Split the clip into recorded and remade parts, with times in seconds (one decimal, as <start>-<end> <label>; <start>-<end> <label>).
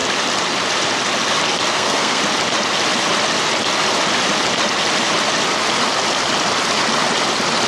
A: 0.0-1.7 recorded; 1.7-2.2 remade; 2.2-7.7 recorded